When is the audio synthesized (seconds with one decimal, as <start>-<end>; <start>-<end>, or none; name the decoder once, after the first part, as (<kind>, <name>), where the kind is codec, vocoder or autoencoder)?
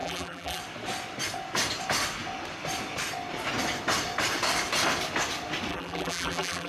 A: 0.0-0.6 (vocoder, BigVGAN v2); 5.7-6.7